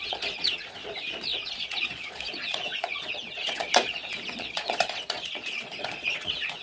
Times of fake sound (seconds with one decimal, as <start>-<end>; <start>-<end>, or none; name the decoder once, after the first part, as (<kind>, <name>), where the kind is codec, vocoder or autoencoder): 0.0-6.6 (vocoder, Vocos)